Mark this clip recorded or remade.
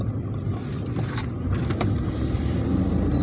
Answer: remade